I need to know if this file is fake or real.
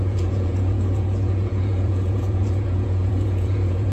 fake